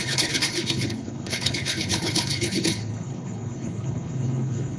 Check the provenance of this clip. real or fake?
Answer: fake